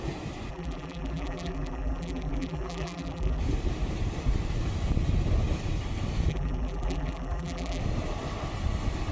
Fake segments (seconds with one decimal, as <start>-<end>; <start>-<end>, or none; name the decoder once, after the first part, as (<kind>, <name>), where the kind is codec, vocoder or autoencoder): 0.5-3.4 (vocoder, BigVGAN v2); 6.3-7.8

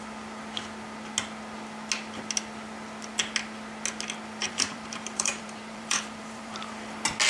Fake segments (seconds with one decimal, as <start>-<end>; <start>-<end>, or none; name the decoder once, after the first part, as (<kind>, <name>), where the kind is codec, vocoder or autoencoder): 4.4-6.7 (vocoder, BigVGAN v2)

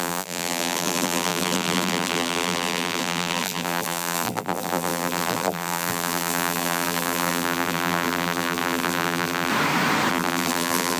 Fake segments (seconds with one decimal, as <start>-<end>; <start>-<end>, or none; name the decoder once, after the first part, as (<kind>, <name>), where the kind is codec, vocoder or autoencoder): 0.0-9.5 (vocoder, BigVGAN v2); 10.1-11.0

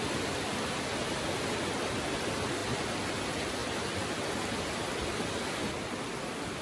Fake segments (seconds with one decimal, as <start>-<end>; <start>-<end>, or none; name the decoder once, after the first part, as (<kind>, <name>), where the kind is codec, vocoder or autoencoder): none

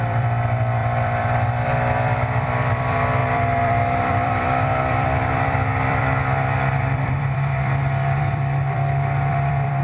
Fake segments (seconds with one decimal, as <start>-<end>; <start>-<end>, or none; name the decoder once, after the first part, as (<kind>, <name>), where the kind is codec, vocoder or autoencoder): 0.0-9.8 (vocoder, BigVGAN v2)